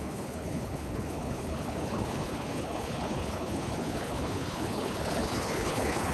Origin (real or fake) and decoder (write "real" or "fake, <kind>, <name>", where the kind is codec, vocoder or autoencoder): fake, codec, HILCodec